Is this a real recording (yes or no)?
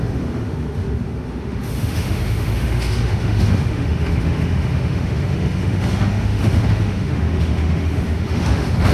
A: no